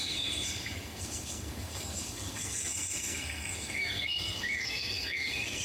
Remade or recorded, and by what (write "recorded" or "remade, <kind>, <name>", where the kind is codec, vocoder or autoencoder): remade, codec, SNAC